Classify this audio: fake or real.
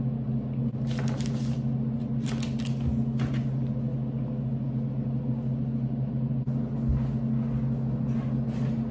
real